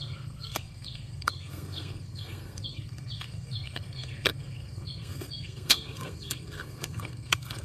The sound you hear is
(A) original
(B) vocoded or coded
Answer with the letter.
B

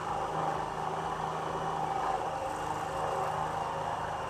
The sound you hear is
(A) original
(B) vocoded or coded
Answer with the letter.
A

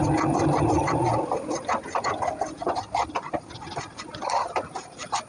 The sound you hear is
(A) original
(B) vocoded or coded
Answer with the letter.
A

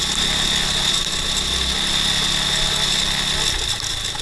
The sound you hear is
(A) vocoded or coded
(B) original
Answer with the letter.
B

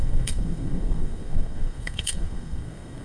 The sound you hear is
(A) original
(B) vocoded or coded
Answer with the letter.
B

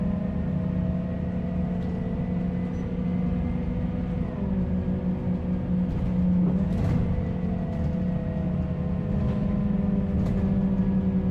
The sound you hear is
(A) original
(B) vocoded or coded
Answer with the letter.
A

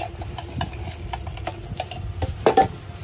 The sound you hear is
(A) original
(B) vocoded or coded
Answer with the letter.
A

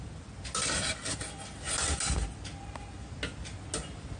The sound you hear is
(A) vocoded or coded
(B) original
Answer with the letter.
B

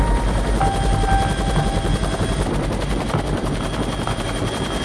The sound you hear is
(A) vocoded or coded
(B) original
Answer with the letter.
B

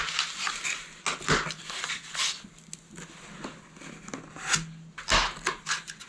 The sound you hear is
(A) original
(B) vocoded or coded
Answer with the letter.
A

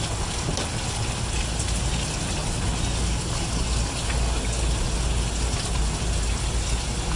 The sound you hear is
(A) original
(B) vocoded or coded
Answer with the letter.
A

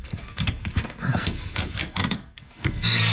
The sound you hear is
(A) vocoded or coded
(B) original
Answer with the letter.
A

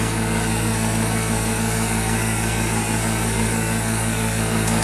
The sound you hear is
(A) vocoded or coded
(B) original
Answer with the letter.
A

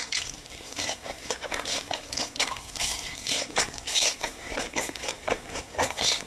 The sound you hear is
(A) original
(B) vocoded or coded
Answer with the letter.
B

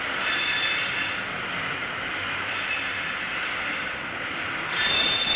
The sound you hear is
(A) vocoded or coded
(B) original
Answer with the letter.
B